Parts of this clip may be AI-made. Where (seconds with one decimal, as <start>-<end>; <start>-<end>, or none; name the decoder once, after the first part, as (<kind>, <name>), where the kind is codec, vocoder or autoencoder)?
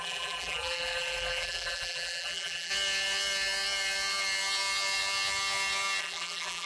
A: 0.0-2.7 (vocoder, BigVGAN v2); 6.0-6.7